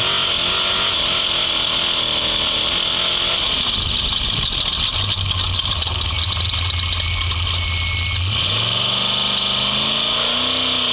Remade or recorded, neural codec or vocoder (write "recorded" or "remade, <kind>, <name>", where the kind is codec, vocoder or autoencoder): recorded